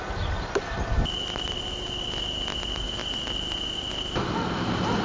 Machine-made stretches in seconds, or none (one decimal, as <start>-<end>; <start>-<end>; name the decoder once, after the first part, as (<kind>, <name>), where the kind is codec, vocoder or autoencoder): none